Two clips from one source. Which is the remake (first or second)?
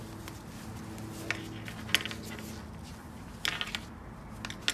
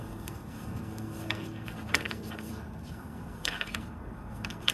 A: second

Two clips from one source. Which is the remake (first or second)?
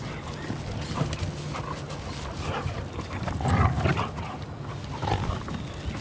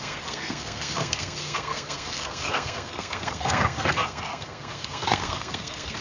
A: second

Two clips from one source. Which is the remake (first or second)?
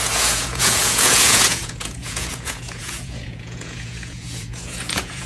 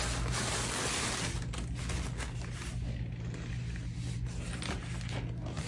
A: first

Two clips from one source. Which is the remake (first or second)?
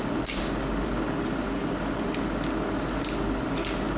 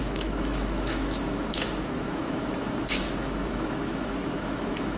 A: second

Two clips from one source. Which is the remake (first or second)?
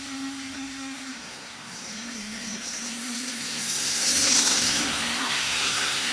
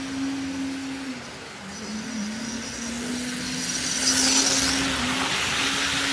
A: first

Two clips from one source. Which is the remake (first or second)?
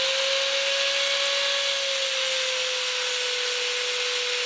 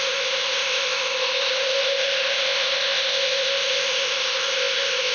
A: second